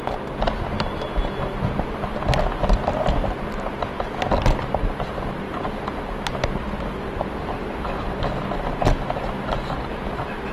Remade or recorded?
recorded